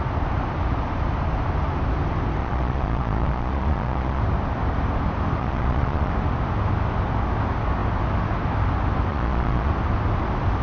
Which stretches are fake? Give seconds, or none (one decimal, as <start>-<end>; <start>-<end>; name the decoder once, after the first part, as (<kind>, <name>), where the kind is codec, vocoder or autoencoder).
2.4-4.2 (vocoder, Vocos); 5.4-6.1; 9.1-9.7